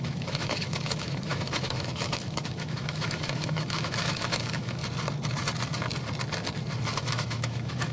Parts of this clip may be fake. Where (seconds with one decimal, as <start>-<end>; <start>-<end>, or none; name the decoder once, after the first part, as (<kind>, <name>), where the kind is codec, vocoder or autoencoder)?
0.0-4.8 (autoencoder, DAC-VAE); 7.0-7.9